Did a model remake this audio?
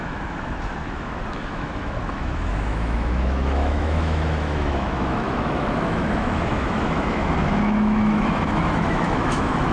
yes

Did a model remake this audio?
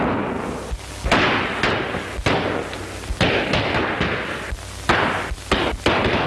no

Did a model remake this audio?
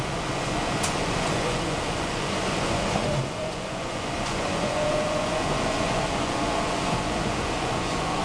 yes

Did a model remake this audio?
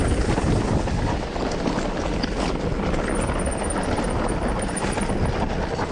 no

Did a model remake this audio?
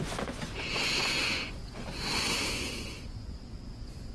yes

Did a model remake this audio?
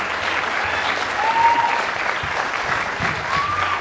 no